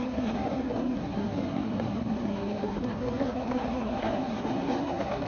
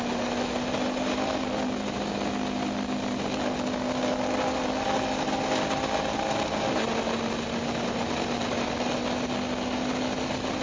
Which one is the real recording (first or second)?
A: second